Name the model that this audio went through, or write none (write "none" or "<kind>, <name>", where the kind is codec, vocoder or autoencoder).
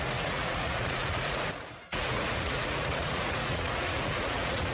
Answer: vocoder, Vocos